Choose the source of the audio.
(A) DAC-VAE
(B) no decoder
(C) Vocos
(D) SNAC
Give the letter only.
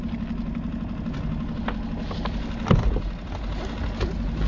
B